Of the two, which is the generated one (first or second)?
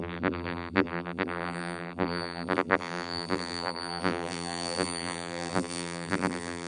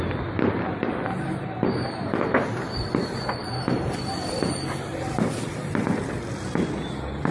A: first